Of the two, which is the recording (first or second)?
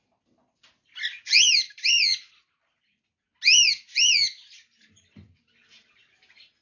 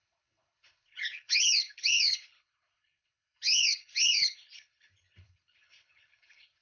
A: first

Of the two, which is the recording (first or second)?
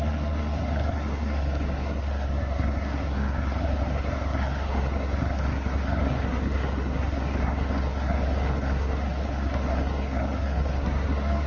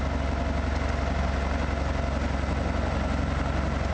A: second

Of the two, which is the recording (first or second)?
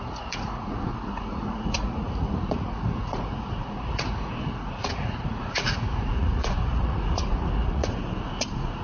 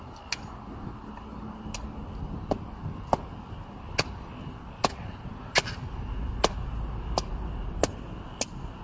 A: second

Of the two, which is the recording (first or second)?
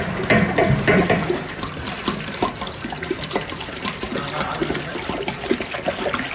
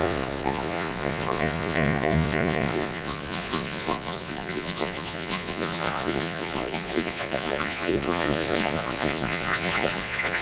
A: first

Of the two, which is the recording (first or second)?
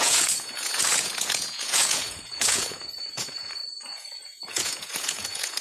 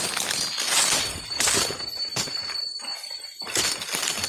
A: second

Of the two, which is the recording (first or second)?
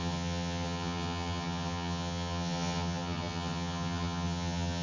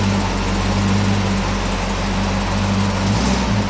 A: second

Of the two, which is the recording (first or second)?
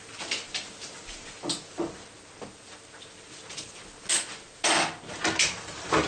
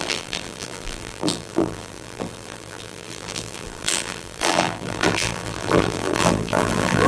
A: first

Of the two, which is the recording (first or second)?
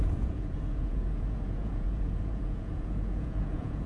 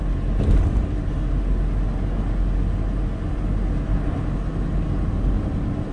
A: second